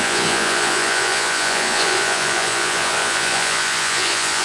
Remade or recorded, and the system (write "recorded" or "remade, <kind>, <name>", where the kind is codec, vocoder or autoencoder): remade, vocoder, Vocos